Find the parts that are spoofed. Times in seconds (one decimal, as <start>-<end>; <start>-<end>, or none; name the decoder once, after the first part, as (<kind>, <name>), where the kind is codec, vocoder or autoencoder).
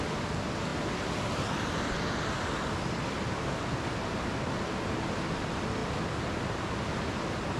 none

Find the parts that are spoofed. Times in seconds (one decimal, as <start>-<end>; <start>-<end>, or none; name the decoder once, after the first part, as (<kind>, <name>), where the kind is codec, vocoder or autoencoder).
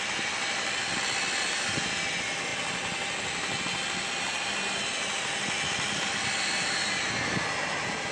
none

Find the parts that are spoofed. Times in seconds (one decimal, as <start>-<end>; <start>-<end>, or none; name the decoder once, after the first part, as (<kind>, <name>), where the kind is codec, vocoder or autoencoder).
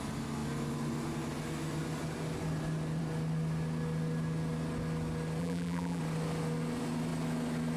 5.4-6.0 (vocoder, BigVGAN v2)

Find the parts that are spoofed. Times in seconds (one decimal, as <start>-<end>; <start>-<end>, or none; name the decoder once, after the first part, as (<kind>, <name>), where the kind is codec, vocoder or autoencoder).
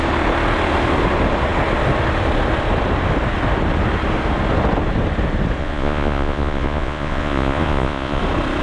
5.6-8.2 (vocoder, Vocos)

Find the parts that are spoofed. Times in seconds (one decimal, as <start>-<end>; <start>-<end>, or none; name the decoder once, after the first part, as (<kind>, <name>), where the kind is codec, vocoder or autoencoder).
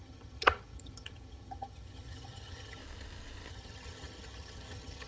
0.0-2.8 (vocoder, HiFi-GAN); 3.5-5.1